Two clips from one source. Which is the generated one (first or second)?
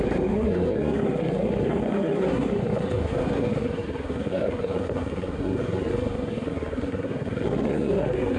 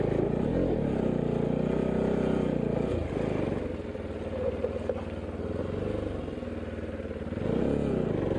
first